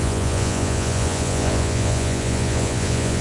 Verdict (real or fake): fake